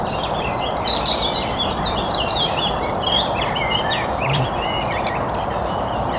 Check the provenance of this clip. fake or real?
fake